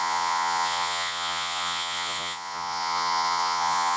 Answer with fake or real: fake